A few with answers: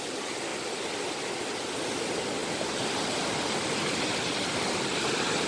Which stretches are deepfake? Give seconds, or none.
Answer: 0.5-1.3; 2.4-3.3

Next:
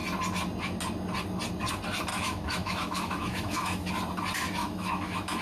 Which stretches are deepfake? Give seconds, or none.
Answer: 2.1-3.9; 4.6-5.4

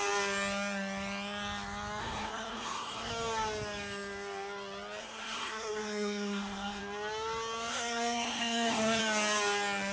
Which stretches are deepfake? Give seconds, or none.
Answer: 2.0-3.1; 5.0-6.8; 7.7-9.0

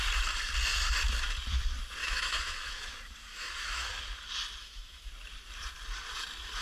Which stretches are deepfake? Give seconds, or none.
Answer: 2.0-2.8; 3.3-3.9; 4.6-5.1

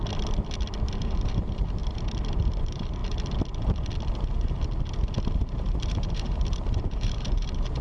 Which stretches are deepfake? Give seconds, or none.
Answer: 1.0-1.8; 2.6-3.0; 5.4-7.8

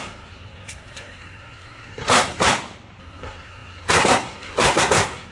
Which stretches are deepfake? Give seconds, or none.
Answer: 0.0-2.5; 3.0-5.3

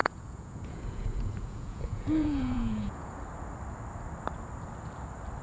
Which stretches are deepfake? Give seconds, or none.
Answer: 0.0-3.2